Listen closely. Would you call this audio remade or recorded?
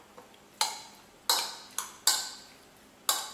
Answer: recorded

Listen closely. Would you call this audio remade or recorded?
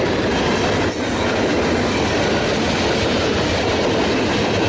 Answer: recorded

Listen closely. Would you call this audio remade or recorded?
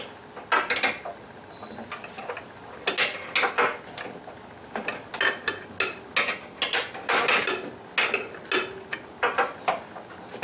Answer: recorded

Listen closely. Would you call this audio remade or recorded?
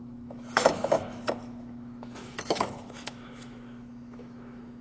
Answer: remade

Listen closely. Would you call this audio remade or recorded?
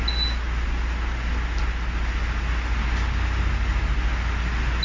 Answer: recorded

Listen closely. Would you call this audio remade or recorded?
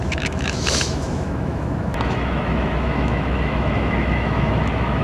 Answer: remade